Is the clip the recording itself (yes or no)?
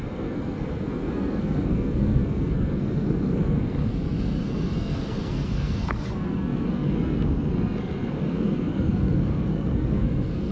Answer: no